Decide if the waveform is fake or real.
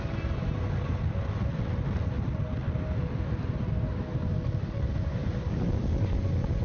real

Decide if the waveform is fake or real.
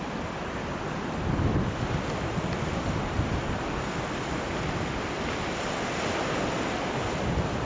real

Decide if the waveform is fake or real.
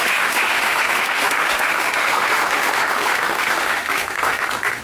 fake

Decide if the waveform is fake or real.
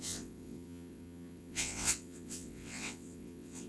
fake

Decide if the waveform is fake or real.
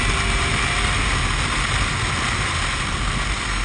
real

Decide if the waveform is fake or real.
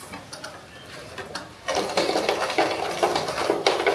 fake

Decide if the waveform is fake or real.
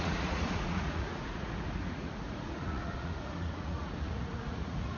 fake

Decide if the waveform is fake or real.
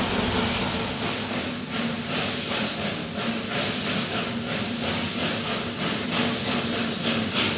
real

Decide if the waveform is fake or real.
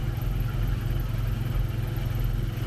real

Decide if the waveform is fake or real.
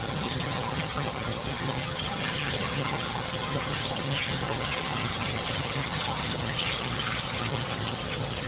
fake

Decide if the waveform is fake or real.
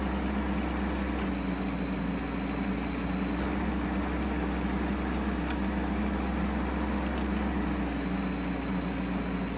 real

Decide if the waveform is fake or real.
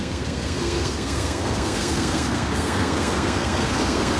fake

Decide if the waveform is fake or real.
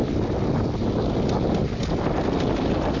real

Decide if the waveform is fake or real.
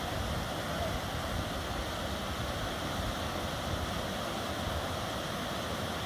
real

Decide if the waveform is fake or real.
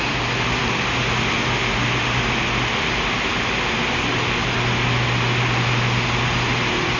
real